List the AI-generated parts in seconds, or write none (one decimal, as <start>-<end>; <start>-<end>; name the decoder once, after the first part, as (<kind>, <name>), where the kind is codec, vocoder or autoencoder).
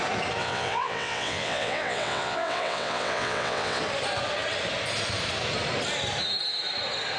0.4-3.8 (vocoder, WaveNeXt)